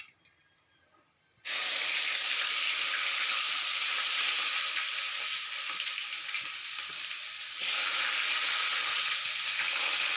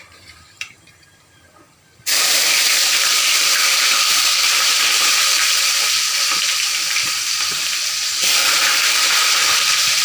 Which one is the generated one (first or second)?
second